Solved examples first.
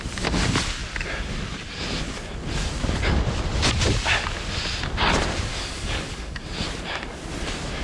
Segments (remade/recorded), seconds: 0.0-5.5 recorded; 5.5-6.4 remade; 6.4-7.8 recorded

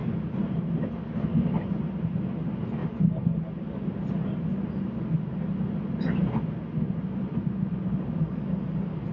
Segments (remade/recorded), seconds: 0.0-8.2 recorded; 8.2-9.1 remade